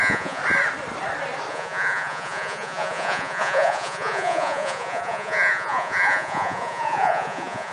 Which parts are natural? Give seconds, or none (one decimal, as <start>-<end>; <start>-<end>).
0.4-1.5